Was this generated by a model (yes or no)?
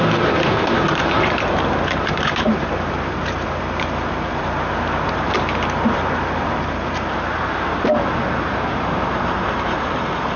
yes